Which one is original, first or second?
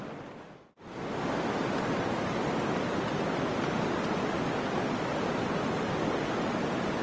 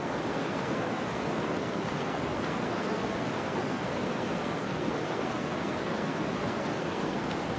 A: first